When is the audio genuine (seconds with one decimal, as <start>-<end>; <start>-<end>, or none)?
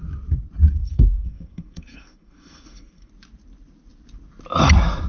0.0-0.8; 3.1-5.1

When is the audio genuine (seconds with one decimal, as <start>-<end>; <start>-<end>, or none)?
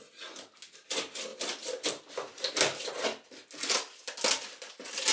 0.0-5.1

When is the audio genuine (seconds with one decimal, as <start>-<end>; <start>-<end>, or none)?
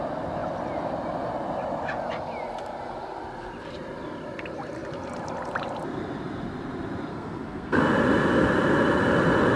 0.0-7.1; 7.8-9.6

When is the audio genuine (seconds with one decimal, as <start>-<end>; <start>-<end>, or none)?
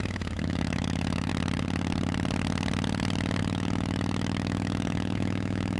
1.3-3.4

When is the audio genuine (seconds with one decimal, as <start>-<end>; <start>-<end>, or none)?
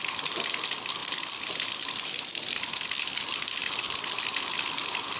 0.0-1.0; 3.9-5.2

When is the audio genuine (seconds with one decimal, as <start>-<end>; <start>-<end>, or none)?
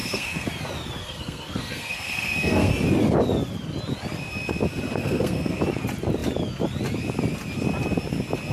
0.5-1.0; 2.7-5.0; 5.6-8.5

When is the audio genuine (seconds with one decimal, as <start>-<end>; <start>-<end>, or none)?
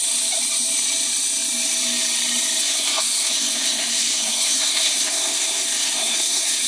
0.0-2.6